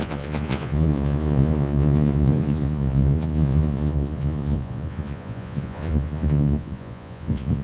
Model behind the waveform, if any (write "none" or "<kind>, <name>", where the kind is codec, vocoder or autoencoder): vocoder, Vocos